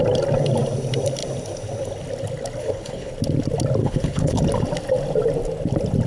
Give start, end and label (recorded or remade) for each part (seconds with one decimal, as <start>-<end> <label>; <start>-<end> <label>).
0.0-2.6 recorded; 2.6-3.1 remade; 3.1-3.8 recorded; 3.8-4.4 remade; 4.4-6.1 recorded